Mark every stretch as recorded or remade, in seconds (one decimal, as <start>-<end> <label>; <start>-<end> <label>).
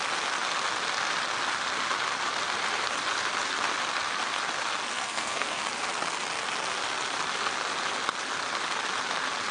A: 0.0-4.9 recorded; 4.9-5.6 remade; 5.6-9.5 recorded